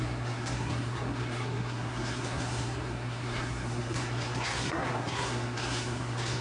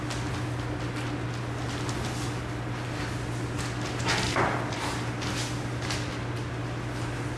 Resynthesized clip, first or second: first